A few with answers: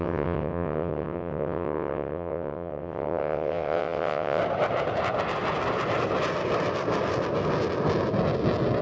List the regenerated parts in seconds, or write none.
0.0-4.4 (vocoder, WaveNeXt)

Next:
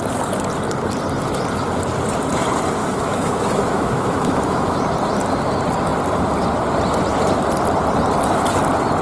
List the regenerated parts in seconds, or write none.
2.8-4.8 (autoencoder, DAC-VAE)

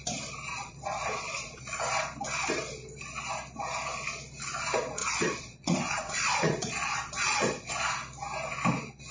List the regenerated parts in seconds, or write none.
0.5-1.6 (vocoder, Vocos); 5.0-7.7

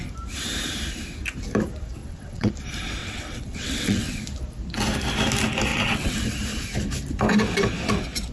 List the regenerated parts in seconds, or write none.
2.0-2.5 (vocoder, WaveNeXt); 3.0-4.2; 5.7-6.2

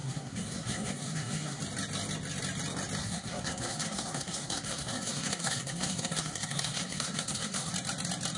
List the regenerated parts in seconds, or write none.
0.0-1.6 (codec, SNAC); 3.0-7.7